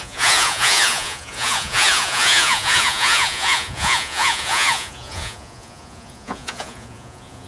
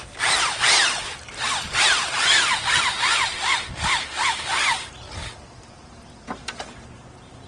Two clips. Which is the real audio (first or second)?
second